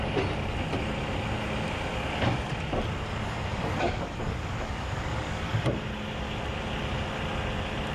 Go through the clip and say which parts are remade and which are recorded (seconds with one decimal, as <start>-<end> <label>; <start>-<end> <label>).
0.0-1.9 recorded; 1.9-2.5 remade; 2.5-3.5 recorded; 3.5-5.5 remade; 5.5-7.9 recorded